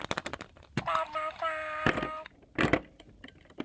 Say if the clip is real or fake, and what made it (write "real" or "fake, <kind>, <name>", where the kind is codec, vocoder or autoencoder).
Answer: real